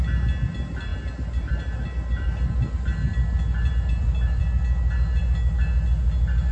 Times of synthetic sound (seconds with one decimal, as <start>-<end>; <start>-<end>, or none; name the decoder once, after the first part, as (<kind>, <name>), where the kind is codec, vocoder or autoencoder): none